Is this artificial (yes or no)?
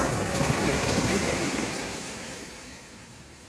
yes